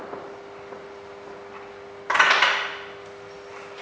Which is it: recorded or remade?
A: recorded